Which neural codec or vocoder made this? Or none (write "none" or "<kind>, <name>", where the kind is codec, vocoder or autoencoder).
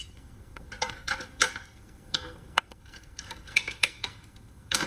codec, SNAC